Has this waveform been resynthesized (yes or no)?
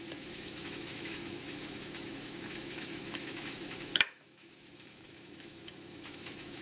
yes